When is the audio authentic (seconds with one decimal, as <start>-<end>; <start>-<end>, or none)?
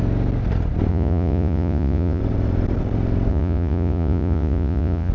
0.0-0.9; 2.2-3.3